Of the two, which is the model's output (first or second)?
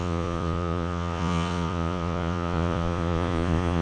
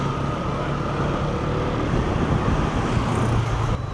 first